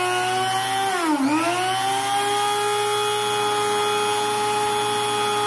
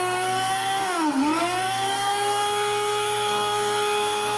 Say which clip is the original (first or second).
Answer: first